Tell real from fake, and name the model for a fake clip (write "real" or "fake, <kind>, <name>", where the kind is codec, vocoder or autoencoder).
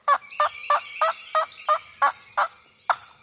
real